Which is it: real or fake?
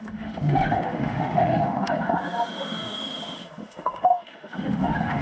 fake